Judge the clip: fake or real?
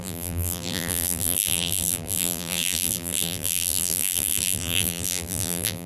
fake